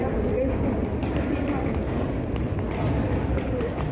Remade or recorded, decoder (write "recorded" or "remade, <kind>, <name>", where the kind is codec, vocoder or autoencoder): recorded